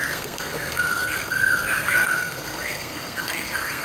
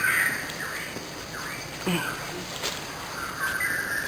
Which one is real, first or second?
second